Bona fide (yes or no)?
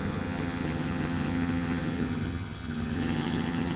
no